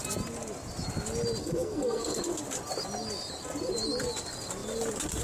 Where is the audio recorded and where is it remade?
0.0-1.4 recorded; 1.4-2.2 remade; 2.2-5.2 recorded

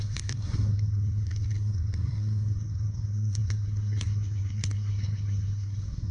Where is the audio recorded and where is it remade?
0.0-6.1 remade

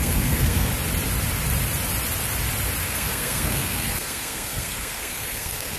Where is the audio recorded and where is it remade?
0.0-0.7 remade; 0.7-2.8 recorded; 2.8-5.8 remade

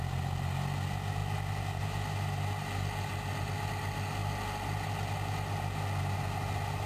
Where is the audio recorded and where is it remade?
0.0-6.9 recorded

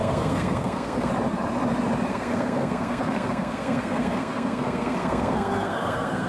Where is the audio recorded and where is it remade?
0.0-1.1 remade; 1.1-2.1 recorded; 2.1-6.3 remade